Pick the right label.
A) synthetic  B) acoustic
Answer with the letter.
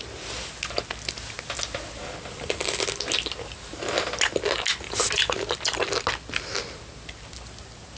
B